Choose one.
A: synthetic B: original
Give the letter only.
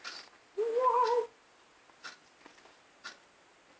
B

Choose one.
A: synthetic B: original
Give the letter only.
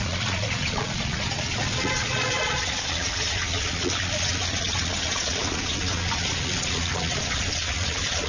A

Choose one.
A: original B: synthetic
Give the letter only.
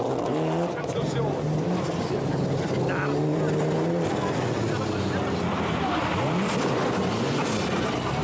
A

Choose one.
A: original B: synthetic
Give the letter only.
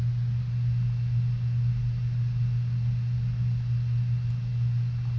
A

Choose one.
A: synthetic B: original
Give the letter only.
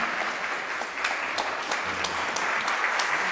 B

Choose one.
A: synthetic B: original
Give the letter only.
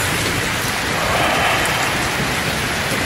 B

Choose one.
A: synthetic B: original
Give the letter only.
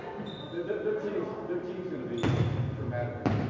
B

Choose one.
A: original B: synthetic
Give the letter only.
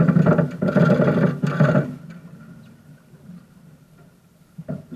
A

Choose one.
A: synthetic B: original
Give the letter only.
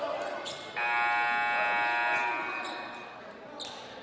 B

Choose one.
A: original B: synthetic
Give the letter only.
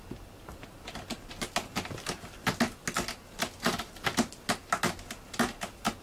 A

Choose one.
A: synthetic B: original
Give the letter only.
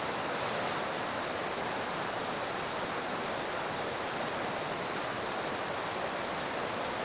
B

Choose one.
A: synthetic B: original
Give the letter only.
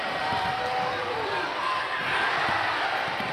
A